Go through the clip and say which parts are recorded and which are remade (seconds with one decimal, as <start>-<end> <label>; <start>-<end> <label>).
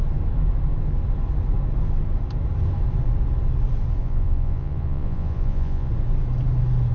0.0-4.0 recorded; 4.0-5.9 remade; 5.9-6.9 recorded